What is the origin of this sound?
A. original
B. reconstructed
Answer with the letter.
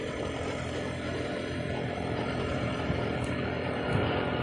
B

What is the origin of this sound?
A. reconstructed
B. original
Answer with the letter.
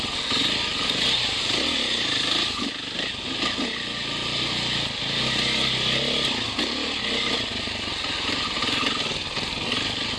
B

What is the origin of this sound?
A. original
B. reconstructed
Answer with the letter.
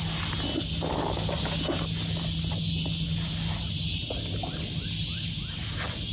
A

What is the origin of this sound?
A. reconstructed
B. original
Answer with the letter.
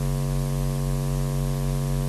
B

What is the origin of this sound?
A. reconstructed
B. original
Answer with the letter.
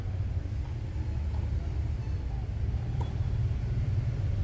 B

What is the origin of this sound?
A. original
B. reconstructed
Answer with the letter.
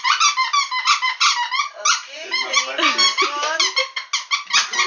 A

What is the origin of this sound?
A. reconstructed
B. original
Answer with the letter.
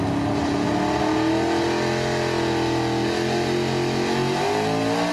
B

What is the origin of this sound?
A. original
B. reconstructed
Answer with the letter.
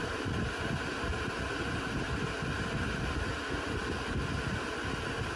A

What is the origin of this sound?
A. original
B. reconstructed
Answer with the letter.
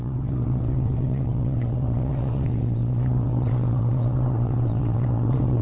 B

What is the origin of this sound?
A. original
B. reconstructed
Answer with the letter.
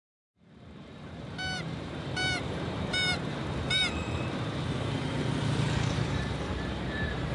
B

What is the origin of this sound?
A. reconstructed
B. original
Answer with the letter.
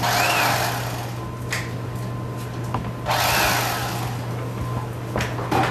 B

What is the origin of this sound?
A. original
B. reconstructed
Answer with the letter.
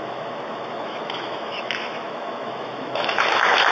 B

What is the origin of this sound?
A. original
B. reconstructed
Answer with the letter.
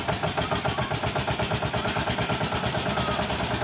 A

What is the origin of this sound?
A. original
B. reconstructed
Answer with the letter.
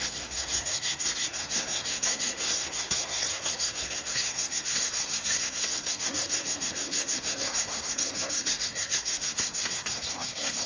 B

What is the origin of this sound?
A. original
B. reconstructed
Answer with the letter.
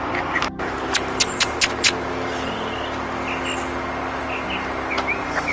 A